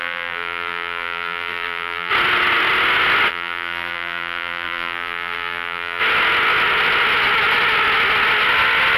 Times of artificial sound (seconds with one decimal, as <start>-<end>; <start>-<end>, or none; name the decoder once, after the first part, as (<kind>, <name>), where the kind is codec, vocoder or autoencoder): 0.0-2.1 (vocoder, BigVGAN v2); 3.3-6.0